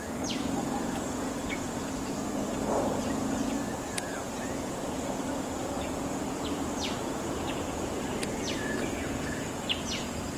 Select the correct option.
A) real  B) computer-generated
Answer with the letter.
B